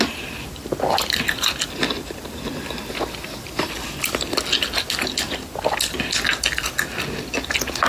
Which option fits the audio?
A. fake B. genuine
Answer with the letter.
B